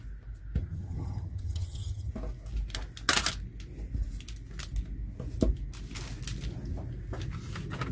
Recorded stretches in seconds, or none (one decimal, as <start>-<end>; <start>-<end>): 0.0-0.6; 2.1-7.9